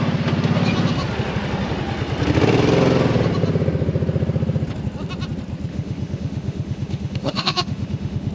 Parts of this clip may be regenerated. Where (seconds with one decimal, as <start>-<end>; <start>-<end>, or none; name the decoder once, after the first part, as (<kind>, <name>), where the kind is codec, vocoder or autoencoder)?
5.7-8.3 (autoencoder, DAC-VAE)